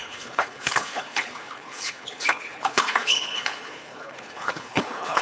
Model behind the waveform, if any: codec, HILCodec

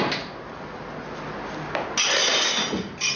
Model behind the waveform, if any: none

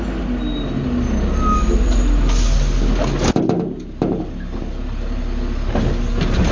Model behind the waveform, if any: none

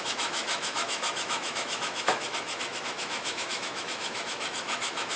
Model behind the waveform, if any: autoencoder, DAC-VAE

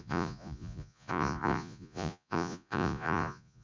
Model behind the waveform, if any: vocoder, Vocos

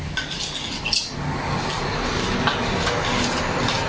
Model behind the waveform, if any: none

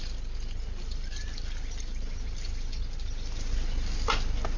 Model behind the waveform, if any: none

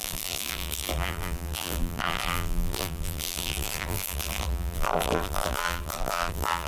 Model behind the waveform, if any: vocoder, BigVGAN v2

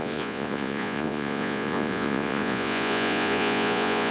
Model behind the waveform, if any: vocoder, Vocos